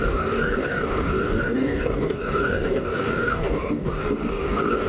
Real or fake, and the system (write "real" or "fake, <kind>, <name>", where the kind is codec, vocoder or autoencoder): fake, codec, DAC